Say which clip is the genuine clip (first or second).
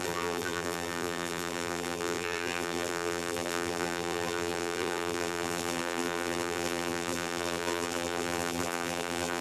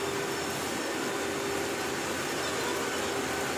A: second